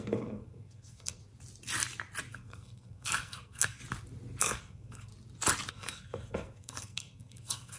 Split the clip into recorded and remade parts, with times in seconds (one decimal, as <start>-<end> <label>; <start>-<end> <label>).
0.0-1.2 remade; 1.2-2.3 recorded; 2.3-3.8 remade; 3.8-4.4 recorded; 4.4-5.1 remade; 5.1-5.7 recorded; 5.7-7.8 remade